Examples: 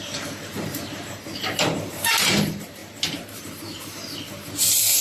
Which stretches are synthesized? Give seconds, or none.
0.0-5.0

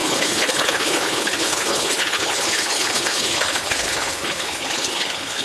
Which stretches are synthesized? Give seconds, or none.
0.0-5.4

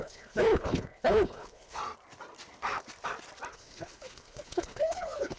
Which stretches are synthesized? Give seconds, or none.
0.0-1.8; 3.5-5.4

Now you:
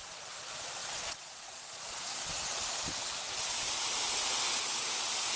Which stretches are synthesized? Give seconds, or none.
0.0-2.3

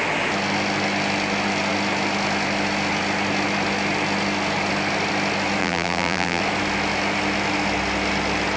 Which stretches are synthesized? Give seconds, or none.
5.6-6.4

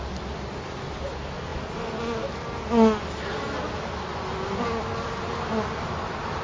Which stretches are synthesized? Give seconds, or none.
none